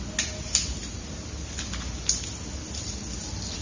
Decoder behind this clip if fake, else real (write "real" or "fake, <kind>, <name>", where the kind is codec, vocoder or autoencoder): real